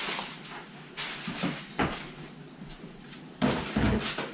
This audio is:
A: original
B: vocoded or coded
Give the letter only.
A